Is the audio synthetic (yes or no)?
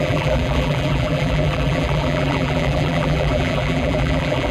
yes